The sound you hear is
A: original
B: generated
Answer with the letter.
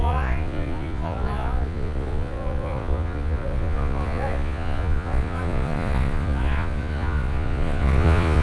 B